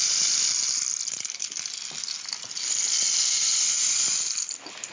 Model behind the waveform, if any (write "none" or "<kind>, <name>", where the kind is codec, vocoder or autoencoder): none